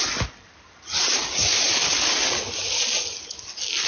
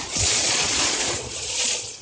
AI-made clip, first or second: second